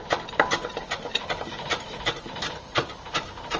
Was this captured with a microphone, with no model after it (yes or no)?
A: no